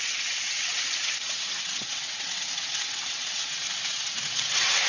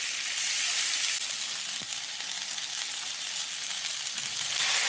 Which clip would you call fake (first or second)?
first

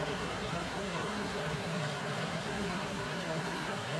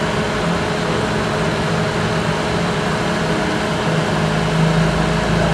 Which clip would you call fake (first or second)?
first